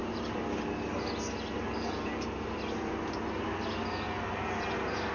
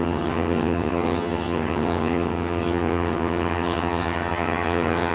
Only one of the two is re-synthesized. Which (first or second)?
second